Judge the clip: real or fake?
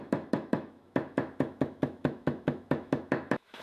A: fake